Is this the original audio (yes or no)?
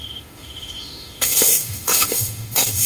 no